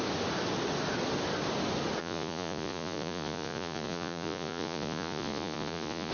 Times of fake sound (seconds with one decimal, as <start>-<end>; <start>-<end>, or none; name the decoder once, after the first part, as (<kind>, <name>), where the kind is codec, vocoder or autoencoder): 2.0-6.1 (vocoder, Vocos)